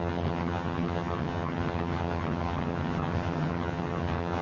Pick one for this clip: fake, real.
fake